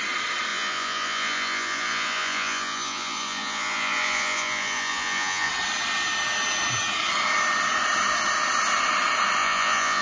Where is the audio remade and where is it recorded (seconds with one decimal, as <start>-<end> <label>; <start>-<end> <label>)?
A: 0.0-0.5 recorded; 0.5-5.5 remade; 5.5-9.4 recorded; 9.4-10.0 remade